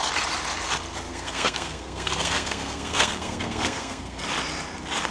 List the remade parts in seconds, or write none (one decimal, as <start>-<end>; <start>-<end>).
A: 1.1-4.2